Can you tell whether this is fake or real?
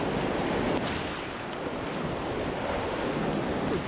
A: real